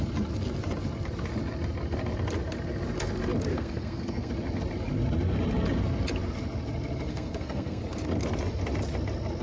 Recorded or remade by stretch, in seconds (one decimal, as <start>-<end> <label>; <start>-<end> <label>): 0.0-3.5 recorded; 3.5-4.3 remade; 4.3-7.1 recorded; 7.1-7.8 remade; 7.8-9.4 recorded